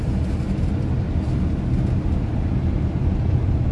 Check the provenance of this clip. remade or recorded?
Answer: remade